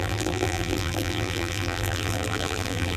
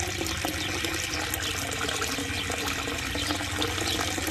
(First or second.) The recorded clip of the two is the second